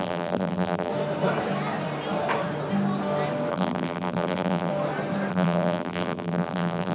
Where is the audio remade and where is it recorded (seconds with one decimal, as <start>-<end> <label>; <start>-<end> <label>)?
0.0-0.9 remade; 0.9-3.5 recorded; 3.5-4.7 remade; 4.7-5.3 recorded; 5.3-6.9 remade